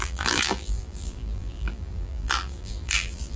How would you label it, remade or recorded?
remade